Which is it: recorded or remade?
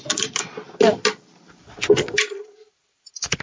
recorded